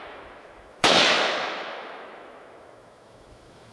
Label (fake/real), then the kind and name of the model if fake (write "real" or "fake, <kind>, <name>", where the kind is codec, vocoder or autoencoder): fake, autoencoder, DAC-VAE